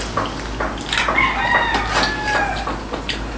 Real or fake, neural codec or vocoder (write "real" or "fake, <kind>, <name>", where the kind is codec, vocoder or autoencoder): real